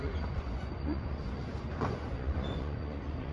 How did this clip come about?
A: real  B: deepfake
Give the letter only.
B